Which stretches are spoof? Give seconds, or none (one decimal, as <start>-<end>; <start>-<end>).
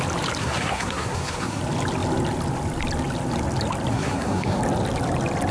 0.4-1.6; 3.9-4.6